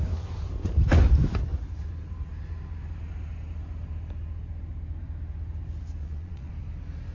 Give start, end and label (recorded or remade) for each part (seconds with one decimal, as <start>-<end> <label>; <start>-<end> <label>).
0.0-6.0 recorded; 6.0-6.5 remade; 6.5-7.1 recorded